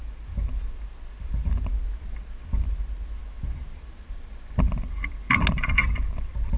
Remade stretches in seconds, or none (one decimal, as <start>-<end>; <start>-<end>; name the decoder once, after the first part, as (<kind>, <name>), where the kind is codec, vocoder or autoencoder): none